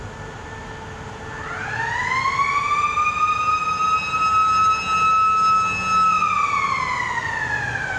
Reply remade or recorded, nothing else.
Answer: recorded